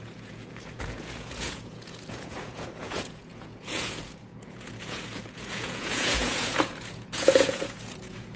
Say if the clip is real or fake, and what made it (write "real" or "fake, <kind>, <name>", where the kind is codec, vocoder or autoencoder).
fake, vocoder, Vocos